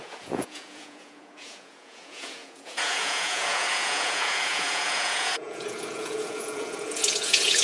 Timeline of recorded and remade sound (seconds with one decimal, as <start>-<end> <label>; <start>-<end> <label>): 0.0-7.6 remade